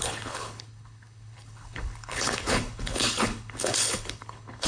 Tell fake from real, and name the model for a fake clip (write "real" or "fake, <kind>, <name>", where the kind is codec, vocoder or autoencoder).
fake, codec, HILCodec